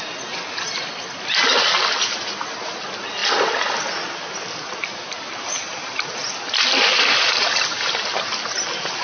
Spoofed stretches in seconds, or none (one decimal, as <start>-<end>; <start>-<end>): none